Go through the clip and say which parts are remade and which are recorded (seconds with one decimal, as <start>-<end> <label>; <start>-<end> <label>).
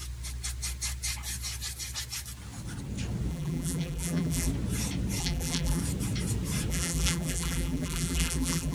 0.0-3.3 recorded; 3.3-4.5 remade; 4.5-5.2 recorded; 5.2-5.8 remade; 5.8-6.7 recorded; 6.7-8.7 remade